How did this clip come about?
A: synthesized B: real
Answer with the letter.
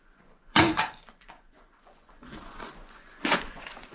A